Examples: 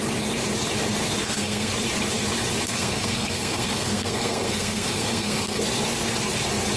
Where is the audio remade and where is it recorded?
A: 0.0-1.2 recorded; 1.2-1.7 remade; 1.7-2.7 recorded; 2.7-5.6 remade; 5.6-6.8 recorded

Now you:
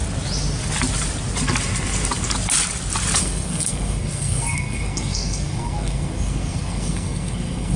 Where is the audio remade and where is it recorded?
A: 0.0-3.2 recorded; 3.2-7.8 remade

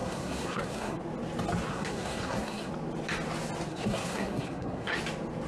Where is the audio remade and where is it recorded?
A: 0.0-1.0 remade; 1.0-1.7 recorded; 1.7-2.7 remade; 2.7-3.7 recorded; 3.7-5.0 remade; 5.0-5.5 recorded